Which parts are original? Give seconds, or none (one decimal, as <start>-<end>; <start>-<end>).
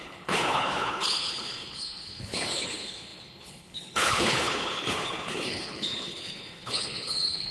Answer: none